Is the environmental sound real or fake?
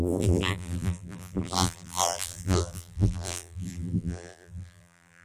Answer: fake